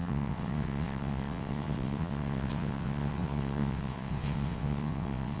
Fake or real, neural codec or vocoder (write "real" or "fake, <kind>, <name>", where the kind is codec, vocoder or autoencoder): fake, vocoder, WaveNeXt